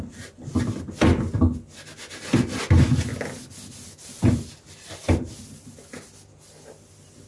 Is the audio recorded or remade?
recorded